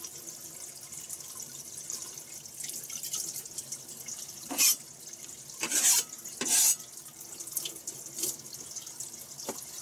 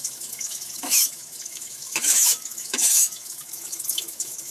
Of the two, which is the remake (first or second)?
second